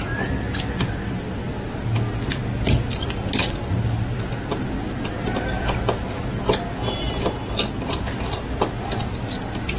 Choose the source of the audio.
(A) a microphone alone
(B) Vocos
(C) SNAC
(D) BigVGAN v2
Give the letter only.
A